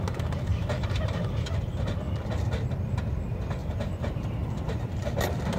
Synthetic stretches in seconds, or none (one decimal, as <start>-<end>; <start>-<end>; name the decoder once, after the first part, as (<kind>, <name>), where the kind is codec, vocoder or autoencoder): 0.5-1.8 (vocoder, BigVGAN v2); 3.6-5.1